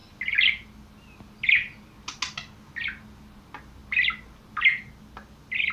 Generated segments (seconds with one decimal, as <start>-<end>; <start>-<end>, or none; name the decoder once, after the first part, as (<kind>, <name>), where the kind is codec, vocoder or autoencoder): none